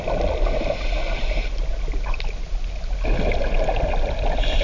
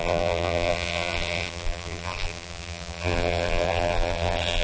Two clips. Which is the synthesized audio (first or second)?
second